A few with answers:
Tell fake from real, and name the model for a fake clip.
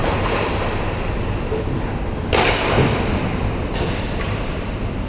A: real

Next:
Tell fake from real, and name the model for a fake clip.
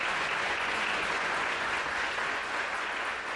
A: fake, vocoder, Vocos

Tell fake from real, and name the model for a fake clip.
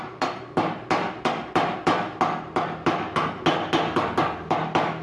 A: real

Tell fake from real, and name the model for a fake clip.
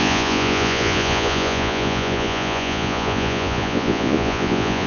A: fake, vocoder, Vocos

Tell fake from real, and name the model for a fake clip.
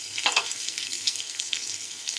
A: fake, codec, SNAC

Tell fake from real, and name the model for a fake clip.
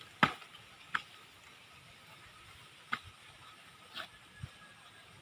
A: real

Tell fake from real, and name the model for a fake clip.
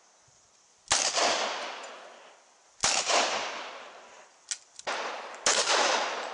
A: real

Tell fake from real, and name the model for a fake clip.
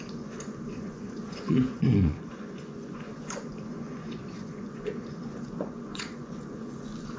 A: fake, vocoder, Vocos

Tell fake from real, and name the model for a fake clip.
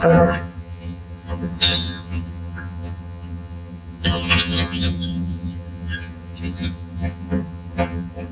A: fake, vocoder, HiFi-GAN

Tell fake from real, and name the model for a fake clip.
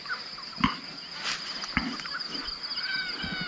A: real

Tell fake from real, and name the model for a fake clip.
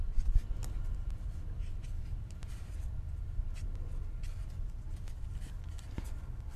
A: fake, vocoder, BigVGAN v2